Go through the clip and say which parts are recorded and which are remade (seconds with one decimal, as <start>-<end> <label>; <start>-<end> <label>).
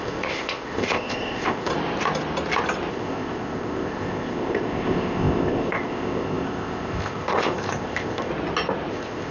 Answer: 0.0-1.7 remade; 1.7-2.9 recorded; 2.9-8.3 remade; 8.3-8.9 recorded; 8.9-9.3 remade